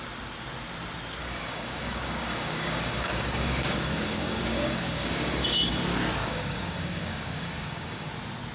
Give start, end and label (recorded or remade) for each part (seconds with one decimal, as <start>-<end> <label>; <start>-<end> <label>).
0.0-1.2 recorded; 1.2-5.7 remade; 5.7-6.2 recorded; 6.2-8.1 remade; 8.1-8.5 recorded